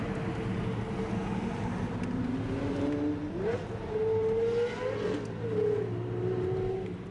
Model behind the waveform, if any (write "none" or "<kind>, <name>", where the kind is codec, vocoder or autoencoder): none